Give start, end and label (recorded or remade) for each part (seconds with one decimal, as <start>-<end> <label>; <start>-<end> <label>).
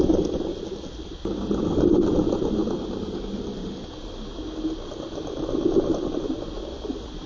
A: 0.0-7.3 recorded